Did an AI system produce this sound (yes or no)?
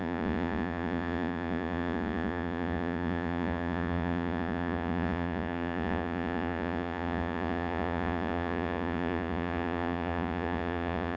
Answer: yes